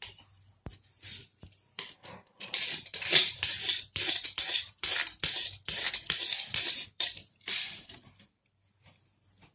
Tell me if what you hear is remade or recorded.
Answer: remade